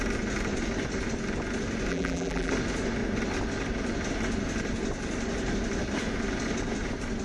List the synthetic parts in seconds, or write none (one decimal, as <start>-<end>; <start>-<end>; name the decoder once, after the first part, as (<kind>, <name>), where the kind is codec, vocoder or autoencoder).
1.9-2.5 (vocoder, BigVGAN v2)